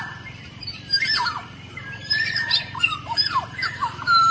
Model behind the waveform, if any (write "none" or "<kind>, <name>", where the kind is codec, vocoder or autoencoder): vocoder, BigVGAN v2